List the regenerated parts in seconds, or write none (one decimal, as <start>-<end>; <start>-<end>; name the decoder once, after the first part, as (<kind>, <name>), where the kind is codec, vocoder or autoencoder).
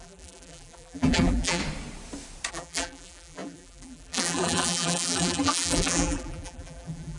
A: 0.0-1.6 (vocoder, BigVGAN v2); 2.5-7.2